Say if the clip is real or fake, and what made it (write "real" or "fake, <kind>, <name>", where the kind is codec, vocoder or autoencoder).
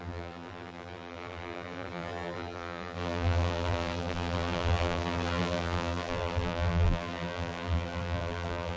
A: fake, vocoder, BigVGAN v2